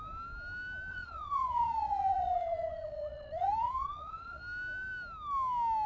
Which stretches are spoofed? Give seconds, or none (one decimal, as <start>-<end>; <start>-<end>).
0.9-4.4